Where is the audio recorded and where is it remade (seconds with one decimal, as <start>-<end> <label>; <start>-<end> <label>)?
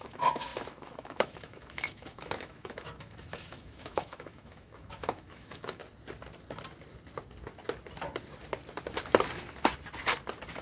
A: 0.0-5.8 remade; 5.8-10.6 recorded